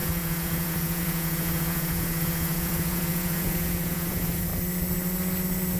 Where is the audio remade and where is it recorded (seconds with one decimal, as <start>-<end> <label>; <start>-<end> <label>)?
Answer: 0.0-4.5 remade; 4.5-5.8 recorded